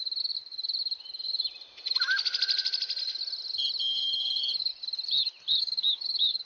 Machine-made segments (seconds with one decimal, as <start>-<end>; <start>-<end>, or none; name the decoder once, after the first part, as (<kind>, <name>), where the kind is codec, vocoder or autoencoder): 3.8-4.7 (codec, DAC); 5.6-6.4